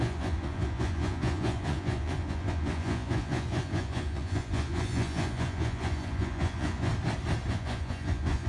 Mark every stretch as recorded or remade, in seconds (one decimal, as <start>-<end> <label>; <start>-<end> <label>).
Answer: 0.0-6.9 remade; 6.9-7.5 recorded; 7.5-8.5 remade